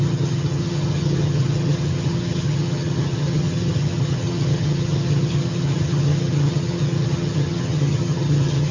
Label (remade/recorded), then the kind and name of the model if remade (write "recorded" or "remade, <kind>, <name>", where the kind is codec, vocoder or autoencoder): remade, vocoder, HiFi-GAN